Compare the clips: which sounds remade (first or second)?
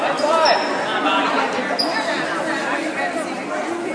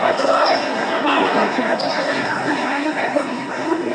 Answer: second